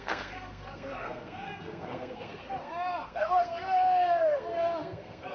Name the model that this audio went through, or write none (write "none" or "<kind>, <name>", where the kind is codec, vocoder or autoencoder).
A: codec, SNAC